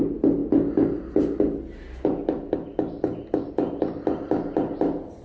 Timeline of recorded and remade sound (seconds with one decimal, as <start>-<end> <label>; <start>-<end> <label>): 0.0-5.2 recorded